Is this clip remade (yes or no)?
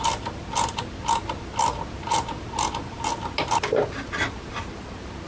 no